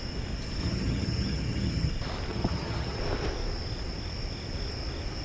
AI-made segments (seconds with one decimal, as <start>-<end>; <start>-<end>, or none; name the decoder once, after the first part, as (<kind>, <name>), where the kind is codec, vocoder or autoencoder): 0.6-1.9 (vocoder, HiFi-GAN); 2.3-3.0